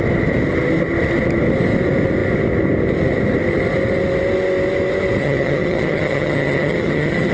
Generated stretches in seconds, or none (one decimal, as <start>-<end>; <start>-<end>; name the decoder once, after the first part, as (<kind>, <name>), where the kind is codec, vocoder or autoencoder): 5.2-7.3 (vocoder, HiFi-GAN)